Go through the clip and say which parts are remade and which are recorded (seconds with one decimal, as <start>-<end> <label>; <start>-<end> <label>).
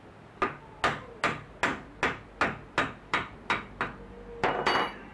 0.0-5.1 recorded